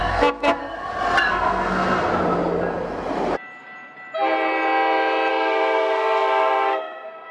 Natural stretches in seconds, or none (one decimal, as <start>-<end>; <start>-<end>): 0.6-1.3; 2.1-5.3